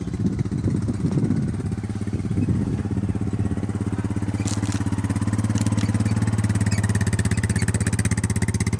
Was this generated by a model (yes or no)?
no